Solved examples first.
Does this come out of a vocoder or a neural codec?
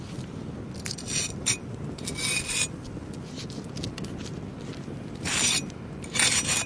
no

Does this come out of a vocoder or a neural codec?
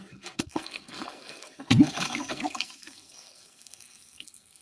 yes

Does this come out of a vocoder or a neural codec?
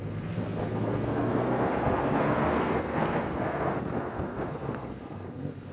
yes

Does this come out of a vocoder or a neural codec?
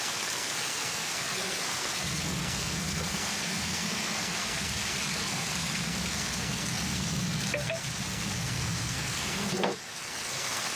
yes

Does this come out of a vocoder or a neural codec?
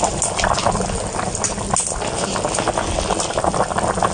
no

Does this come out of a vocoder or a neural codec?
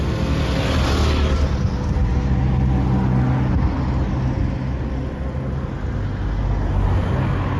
no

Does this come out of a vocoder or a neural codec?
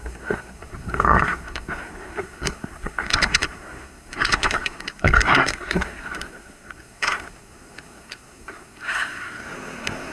yes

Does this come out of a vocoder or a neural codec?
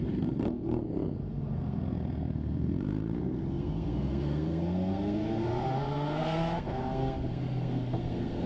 yes